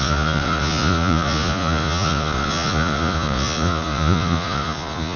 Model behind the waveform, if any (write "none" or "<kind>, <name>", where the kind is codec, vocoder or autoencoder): vocoder, Vocos